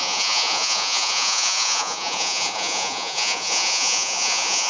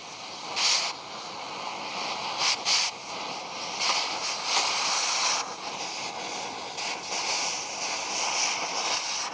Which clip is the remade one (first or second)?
first